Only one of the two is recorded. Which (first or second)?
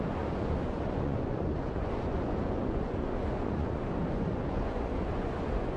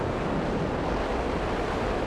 second